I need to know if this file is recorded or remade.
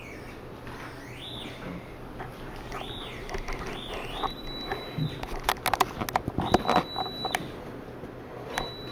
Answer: recorded